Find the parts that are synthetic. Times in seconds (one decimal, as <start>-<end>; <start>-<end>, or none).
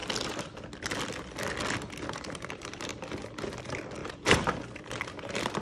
2.1-2.9; 3.6-5.6